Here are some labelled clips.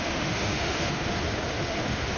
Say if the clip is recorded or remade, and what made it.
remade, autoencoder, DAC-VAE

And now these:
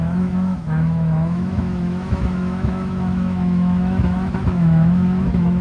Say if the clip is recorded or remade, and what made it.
remade, autoencoder, DAC-VAE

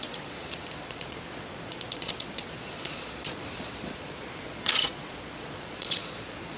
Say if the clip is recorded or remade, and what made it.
remade, vocoder, Vocos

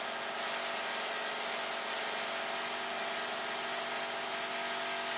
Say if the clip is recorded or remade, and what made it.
recorded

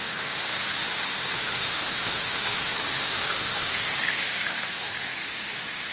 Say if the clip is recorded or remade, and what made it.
remade, autoencoder, DAC-VAE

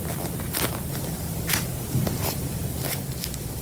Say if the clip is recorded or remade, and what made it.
recorded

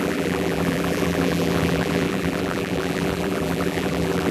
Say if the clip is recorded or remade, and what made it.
remade, vocoder, BigVGAN v2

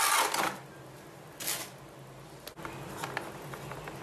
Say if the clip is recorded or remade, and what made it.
recorded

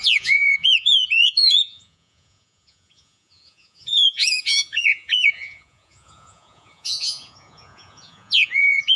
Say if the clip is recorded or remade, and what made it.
remade, vocoder, Vocos